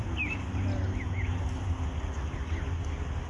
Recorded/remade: recorded